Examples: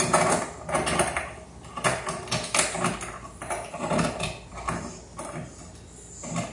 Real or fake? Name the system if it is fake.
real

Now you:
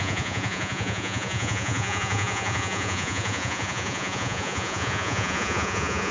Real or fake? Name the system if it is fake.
fake, vocoder, Vocos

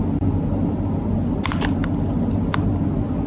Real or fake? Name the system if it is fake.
real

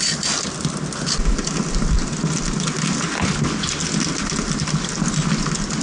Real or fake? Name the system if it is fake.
real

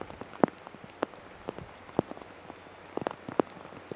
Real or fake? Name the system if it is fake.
real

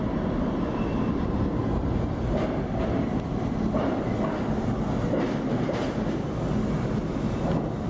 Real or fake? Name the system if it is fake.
real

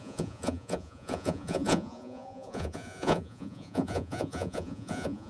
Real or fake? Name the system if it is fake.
fake, vocoder, Vocos